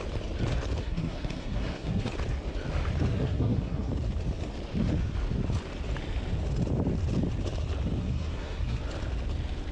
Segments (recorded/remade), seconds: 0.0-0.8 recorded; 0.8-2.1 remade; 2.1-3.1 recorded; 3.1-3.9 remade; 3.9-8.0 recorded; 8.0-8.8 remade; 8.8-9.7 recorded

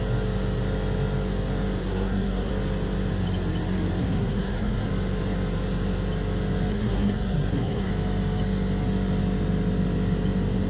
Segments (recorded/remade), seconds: 0.0-1.8 recorded; 1.8-2.5 remade; 2.5-4.0 recorded; 4.0-4.9 remade; 4.9-6.7 recorded; 6.7-7.9 remade; 7.9-10.7 recorded

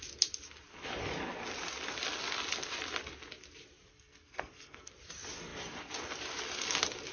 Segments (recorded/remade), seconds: 0.0-3.9 recorded; 3.9-4.9 remade; 4.9-7.1 recorded

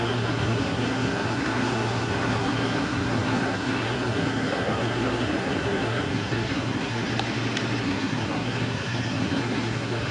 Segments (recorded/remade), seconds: 0.0-7.1 remade; 7.1-7.8 recorded; 7.8-10.1 remade